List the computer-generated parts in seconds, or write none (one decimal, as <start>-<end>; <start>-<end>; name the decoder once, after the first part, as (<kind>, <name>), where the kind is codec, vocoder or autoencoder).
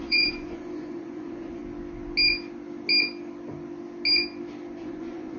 0.0-1.6 (vocoder, Vocos); 4.8-5.4